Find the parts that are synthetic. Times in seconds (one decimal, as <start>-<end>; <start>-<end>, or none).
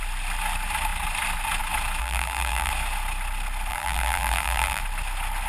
2.0-2.7; 3.7-4.8